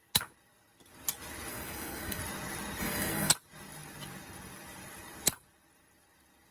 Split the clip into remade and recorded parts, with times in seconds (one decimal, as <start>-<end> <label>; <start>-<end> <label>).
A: 0.0-1.5 recorded; 1.5-2.2 remade; 2.2-2.8 recorded; 2.8-3.3 remade; 3.3-6.5 recorded